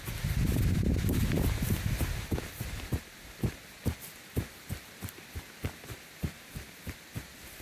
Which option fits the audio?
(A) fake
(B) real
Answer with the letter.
B